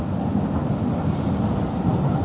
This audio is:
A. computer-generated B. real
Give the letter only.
B